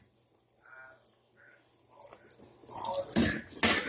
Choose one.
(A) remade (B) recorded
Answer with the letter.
B